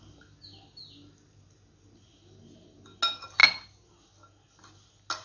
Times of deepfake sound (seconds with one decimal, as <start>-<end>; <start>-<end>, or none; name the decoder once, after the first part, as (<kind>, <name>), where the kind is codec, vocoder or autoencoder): none